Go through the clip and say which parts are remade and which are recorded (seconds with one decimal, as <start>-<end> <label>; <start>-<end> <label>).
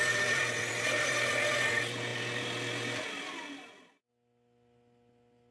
0.0-5.5 recorded